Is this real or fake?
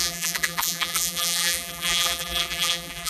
fake